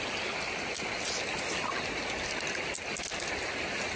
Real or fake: real